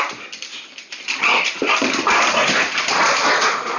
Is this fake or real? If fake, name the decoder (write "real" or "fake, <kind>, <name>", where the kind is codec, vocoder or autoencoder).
fake, vocoder, BigVGAN v2